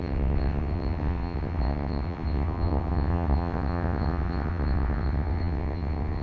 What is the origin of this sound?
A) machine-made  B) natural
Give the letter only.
A